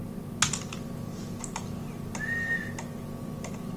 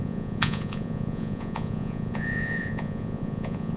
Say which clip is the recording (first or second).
first